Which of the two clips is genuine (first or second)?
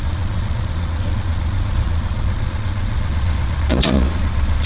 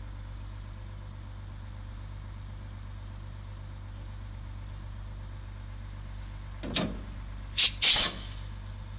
second